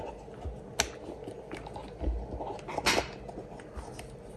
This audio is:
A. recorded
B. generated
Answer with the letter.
A